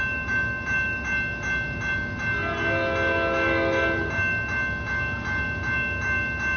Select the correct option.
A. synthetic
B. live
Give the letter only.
B